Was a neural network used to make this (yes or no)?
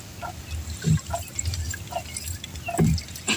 no